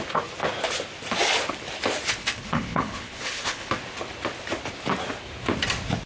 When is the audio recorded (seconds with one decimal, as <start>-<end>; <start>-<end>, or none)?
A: 0.0-2.2; 3.7-6.1